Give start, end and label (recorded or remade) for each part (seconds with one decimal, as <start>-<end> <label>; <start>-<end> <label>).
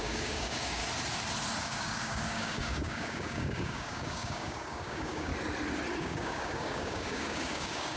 0.0-0.8 remade; 0.8-1.6 recorded; 1.6-5.3 remade; 5.3-6.0 recorded; 6.0-8.0 remade